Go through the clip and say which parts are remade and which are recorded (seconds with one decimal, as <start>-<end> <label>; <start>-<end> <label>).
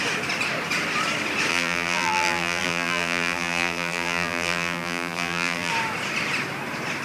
0.0-1.5 recorded; 1.5-5.7 remade; 5.7-7.0 recorded